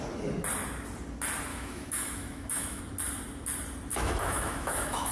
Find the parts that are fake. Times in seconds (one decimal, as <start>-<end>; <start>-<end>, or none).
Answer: 1.5-2.8; 3.9-5.1